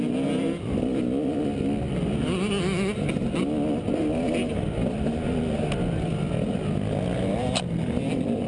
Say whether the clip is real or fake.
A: real